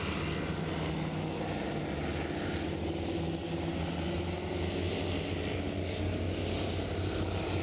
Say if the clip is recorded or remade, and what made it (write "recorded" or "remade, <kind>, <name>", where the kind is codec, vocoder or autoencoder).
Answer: recorded